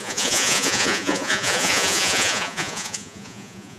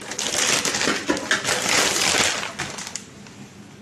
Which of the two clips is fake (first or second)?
first